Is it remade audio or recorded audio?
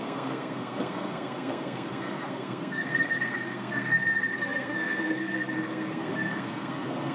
remade